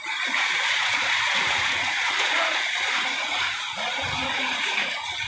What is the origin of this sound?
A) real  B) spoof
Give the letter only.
B